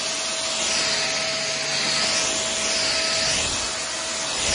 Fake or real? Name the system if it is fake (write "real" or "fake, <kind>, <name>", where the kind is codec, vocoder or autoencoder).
real